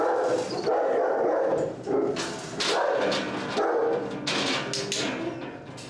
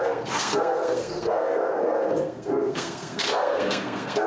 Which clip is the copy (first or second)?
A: second